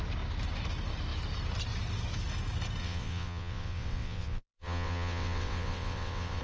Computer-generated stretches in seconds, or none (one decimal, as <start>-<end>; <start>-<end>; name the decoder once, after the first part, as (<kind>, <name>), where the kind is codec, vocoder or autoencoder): 2.8-6.4 (vocoder, WaveNeXt)